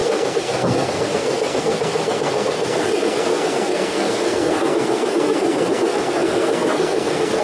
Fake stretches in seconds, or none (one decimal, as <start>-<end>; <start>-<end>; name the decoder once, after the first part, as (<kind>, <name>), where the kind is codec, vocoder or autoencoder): 0.0-7.4 (codec, SNAC)